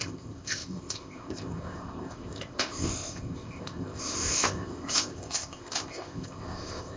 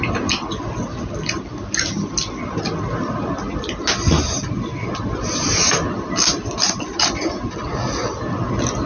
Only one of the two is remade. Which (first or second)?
first